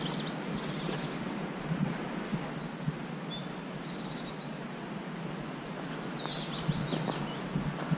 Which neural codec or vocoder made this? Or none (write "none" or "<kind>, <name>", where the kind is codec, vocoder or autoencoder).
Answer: none